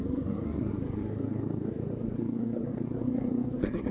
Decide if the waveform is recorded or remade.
remade